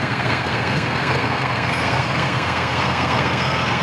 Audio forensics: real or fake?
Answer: fake